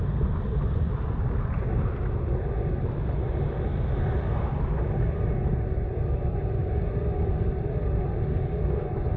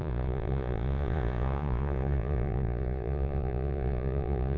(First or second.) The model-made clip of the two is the second